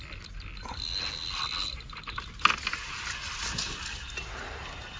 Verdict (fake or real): real